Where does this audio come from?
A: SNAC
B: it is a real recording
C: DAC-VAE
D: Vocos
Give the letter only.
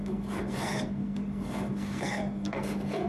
A